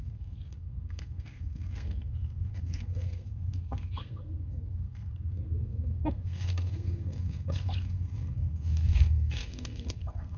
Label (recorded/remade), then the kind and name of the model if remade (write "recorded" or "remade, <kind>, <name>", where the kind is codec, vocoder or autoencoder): remade, codec, SNAC